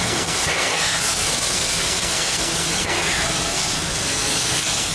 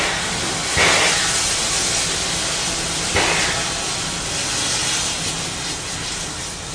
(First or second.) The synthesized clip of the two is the first